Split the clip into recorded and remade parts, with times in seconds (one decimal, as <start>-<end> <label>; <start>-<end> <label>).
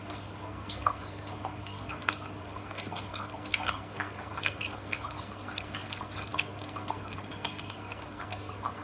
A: 0.0-8.8 remade